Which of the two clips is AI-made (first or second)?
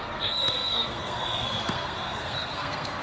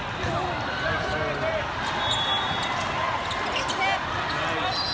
first